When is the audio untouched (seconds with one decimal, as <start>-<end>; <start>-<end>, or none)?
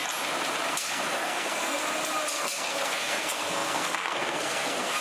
0.0-0.7; 1.8-2.3